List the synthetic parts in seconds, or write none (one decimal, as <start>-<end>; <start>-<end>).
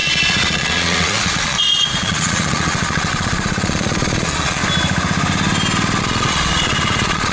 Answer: 0.0-4.6; 6.0-7.3